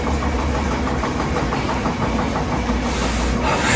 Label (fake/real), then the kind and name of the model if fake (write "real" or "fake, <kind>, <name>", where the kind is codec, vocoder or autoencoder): real